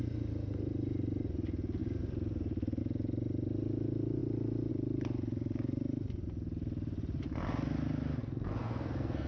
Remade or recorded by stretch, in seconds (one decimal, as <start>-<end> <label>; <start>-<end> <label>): 0.0-8.2 recorded; 8.2-9.3 remade